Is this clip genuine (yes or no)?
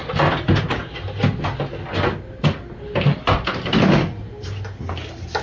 yes